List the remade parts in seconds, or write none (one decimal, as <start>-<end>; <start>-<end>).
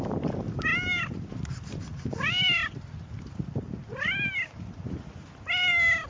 2.6-3.2